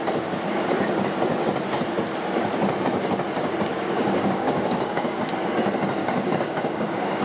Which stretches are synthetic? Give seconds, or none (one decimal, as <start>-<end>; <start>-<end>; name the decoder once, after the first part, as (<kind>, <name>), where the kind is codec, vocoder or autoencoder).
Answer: 3.7-5.3 (codec, DAC); 6.0-7.2